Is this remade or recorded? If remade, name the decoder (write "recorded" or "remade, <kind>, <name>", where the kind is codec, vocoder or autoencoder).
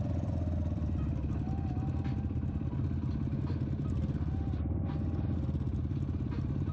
recorded